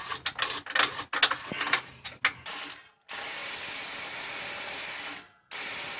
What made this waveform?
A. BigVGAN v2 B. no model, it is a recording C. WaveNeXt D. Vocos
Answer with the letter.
B